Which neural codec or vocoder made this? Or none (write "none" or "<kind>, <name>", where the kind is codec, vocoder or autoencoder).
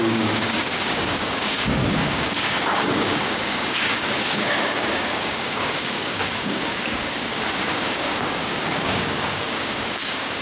codec, DAC